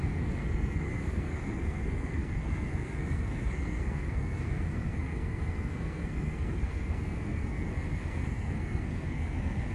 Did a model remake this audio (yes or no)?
yes